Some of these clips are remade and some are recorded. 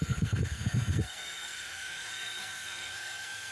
remade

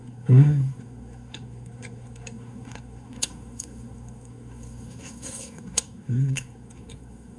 remade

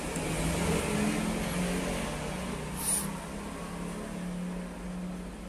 recorded